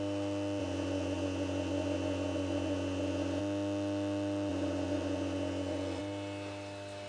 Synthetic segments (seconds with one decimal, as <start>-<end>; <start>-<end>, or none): 0.6-3.4; 4.5-6.0